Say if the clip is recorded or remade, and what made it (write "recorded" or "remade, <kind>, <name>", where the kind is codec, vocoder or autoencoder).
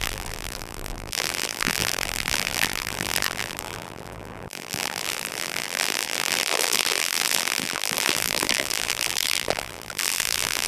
remade, vocoder, BigVGAN v2